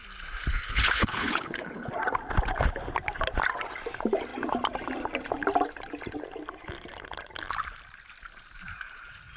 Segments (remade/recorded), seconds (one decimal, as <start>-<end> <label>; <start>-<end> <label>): 0.0-0.5 recorded; 0.5-1.9 remade; 1.9-9.4 recorded